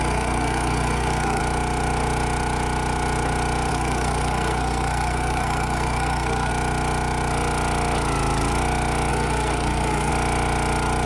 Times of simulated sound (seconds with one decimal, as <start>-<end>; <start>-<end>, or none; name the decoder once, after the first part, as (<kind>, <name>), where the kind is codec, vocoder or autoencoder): 0.0-1.4 (codec, SNAC); 3.7-6.5; 9.1-10.1